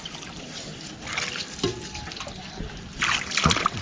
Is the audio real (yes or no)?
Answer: yes